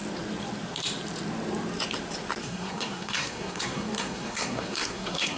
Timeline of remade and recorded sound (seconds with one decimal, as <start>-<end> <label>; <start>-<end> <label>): 0.0-2.4 recorded; 2.4-5.4 remade

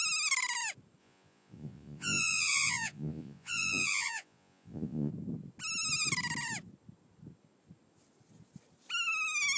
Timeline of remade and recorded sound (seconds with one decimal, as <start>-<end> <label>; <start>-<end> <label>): 0.0-1.0 recorded; 1.0-5.1 remade; 5.1-9.6 recorded

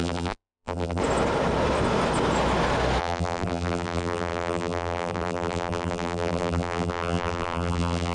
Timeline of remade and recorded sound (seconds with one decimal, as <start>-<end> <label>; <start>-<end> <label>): 0.0-1.0 remade; 1.0-3.0 recorded; 3.0-8.1 remade

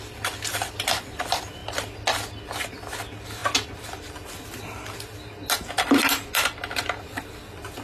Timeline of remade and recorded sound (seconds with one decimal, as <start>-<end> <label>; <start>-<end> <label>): 0.0-7.8 recorded

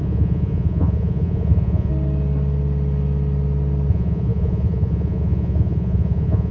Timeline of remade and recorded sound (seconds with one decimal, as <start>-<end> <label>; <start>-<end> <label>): 0.0-1.9 remade; 1.9-3.9 recorded; 3.9-6.5 remade